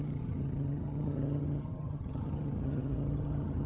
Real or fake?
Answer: fake